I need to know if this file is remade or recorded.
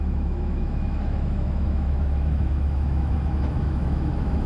remade